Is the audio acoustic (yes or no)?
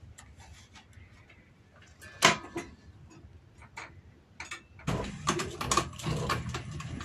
yes